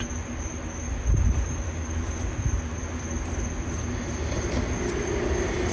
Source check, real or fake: real